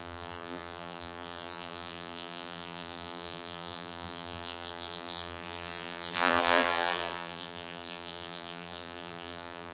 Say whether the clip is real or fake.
fake